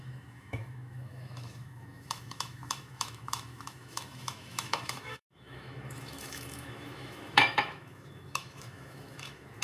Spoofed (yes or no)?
yes